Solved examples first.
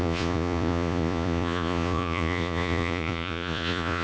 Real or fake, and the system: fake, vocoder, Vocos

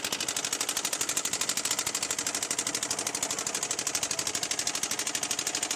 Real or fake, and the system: real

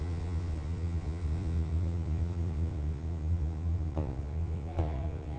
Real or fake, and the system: fake, vocoder, Vocos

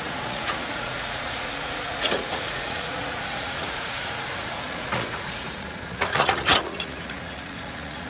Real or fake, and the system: fake, vocoder, Vocos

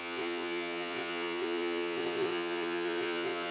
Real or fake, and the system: fake, vocoder, Vocos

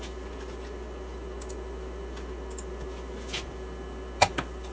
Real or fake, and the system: real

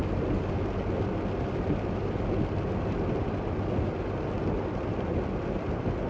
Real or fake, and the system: real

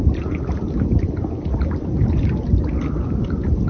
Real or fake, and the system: real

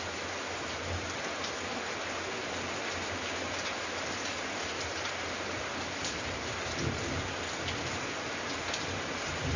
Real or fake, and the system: real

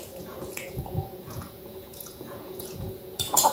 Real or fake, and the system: fake, vocoder, Vocos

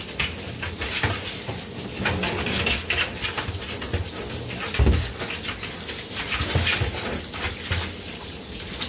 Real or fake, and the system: real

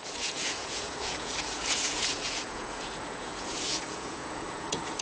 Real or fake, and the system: fake, vocoder, Vocos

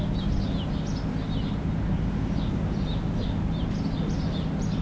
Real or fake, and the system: real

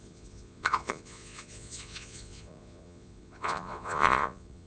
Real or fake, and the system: fake, vocoder, Vocos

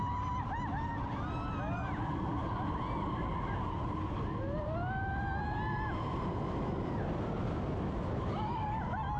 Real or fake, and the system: real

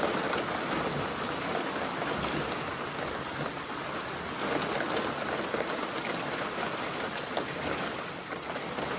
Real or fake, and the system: real